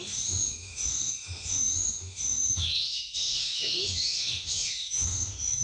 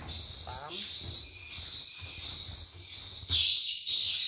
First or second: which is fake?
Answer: first